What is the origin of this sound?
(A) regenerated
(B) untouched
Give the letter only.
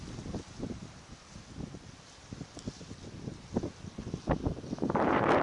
B